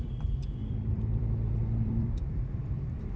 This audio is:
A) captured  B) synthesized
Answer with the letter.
B